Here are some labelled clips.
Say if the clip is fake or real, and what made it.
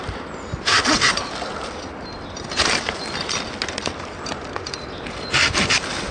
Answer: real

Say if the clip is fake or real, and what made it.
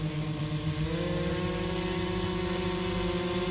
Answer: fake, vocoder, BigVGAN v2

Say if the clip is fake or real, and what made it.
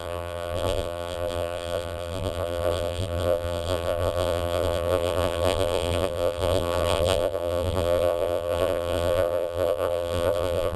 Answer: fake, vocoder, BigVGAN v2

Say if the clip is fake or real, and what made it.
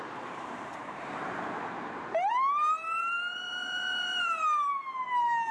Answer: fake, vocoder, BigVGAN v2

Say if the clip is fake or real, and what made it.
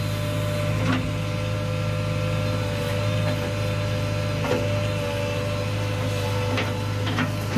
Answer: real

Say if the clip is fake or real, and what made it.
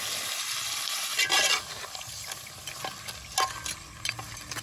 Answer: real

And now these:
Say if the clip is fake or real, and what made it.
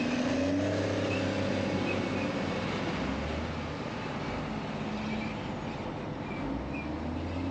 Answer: real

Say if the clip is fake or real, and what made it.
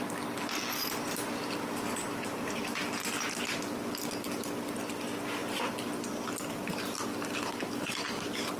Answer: real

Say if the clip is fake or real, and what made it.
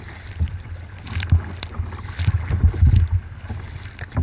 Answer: real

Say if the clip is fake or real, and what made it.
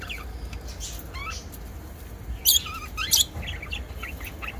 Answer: real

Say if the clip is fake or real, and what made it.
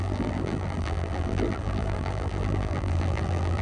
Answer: fake, vocoder, BigVGAN v2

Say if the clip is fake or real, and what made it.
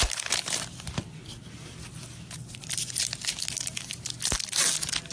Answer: real